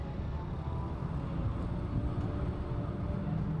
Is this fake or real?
real